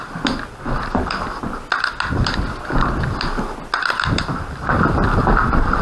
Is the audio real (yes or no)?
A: yes